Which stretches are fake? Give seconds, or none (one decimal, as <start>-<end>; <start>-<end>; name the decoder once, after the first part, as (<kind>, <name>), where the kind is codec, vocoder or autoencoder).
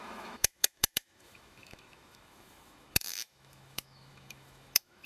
0.0-5.1 (autoencoder, DAC-VAE)